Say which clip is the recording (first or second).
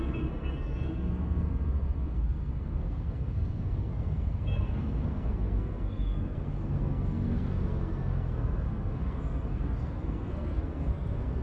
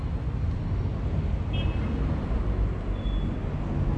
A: second